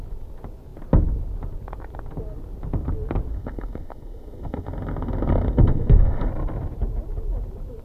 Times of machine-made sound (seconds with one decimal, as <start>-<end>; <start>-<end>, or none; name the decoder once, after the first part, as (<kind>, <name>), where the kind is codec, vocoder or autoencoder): 3.3-6.3 (codec, SNAC)